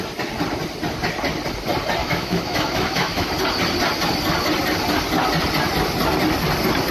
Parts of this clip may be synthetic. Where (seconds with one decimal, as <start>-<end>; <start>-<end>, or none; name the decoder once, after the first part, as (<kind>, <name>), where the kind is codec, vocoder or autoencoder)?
2.0-3.3 (autoencoder, DAC-VAE)